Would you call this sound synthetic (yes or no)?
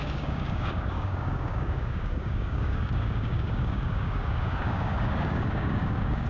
yes